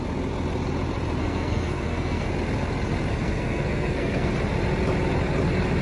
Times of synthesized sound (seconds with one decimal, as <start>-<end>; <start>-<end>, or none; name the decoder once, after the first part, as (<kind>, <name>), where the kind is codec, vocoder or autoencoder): 1.2-2.3 (codec, SNAC); 3.1-4.3